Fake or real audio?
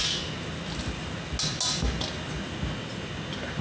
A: real